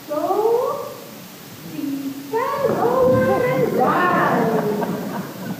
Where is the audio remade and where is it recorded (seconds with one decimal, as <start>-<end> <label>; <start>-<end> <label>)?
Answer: 0.0-3.1 recorded; 3.1-4.3 remade; 4.3-5.6 recorded